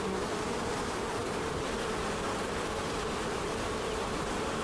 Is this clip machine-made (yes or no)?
yes